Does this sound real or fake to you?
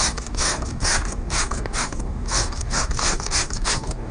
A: fake